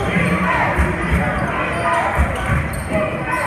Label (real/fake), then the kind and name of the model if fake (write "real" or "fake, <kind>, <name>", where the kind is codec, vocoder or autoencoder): real